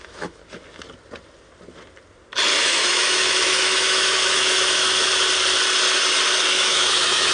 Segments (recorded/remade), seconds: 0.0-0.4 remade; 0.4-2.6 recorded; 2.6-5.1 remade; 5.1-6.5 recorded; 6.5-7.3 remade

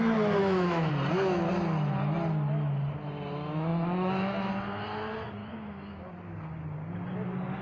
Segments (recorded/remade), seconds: 0.0-0.4 recorded; 0.4-0.9 remade; 0.9-3.7 recorded; 3.7-4.5 remade; 4.5-5.4 recorded; 5.4-6.1 remade; 6.1-7.6 recorded

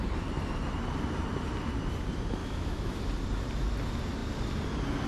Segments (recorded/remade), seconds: 0.0-2.4 recorded; 2.4-3.0 remade; 3.0-5.1 recorded